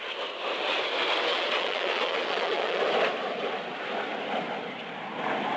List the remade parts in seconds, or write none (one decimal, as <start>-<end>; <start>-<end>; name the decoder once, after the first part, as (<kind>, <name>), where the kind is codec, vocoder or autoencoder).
1.3-2.8 (vocoder, Vocos)

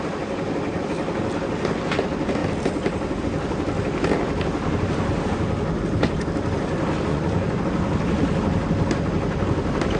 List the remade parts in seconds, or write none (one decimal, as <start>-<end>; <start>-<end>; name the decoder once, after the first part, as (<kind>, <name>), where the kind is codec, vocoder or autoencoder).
7.1-7.6 (vocoder, Vocos)